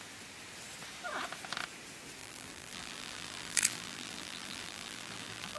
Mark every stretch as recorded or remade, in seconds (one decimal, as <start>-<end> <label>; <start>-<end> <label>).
0.0-2.2 recorded; 2.2-5.6 remade